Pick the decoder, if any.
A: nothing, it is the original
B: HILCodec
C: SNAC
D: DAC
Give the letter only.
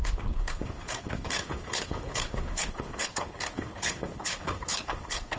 B